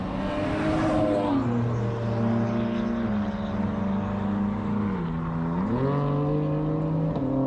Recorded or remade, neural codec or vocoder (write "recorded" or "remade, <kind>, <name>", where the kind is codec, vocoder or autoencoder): recorded